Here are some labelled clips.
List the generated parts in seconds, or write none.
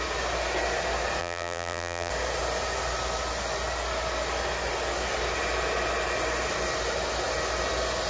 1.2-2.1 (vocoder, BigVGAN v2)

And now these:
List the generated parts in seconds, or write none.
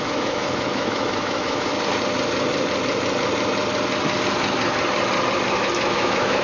0.0-1.7 (autoencoder, DAC-VAE); 5.5-6.4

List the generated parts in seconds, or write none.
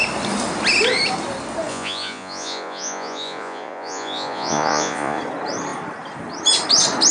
1.7-5.2 (vocoder, Vocos)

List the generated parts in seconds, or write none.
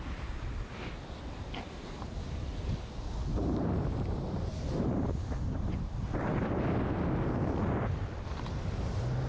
3.3-6.7 (vocoder, BigVGAN v2)